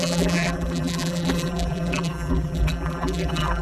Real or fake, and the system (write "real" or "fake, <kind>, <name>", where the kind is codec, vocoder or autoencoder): fake, vocoder, BigVGAN v2